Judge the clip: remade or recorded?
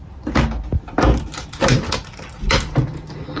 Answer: recorded